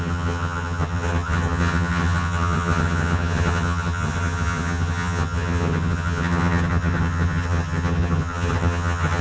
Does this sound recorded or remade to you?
remade